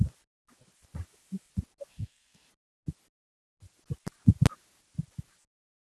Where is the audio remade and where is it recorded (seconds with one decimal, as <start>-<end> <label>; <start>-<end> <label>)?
0.0-1.9 recorded; 1.9-2.5 remade; 2.5-5.9 recorded